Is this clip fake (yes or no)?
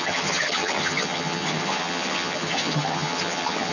yes